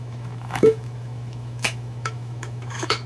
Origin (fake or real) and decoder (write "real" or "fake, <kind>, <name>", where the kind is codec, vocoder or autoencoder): fake, autoencoder, DAC-VAE